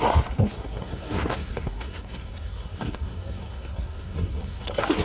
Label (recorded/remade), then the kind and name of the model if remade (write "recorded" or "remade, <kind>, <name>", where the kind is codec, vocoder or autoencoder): remade, codec, SNAC